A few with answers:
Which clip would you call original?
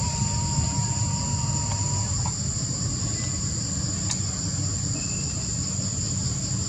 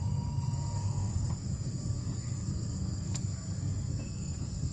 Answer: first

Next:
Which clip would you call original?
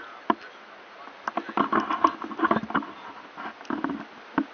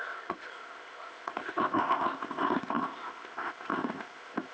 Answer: first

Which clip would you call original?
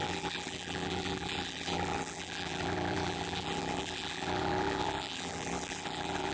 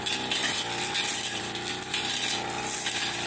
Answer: second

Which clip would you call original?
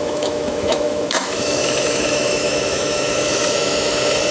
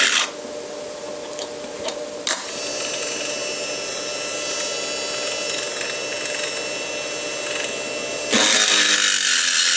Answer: second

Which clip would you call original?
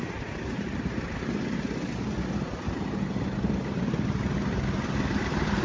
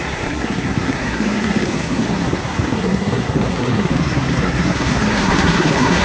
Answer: first